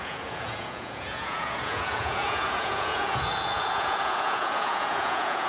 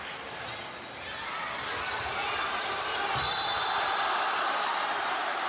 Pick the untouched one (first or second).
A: second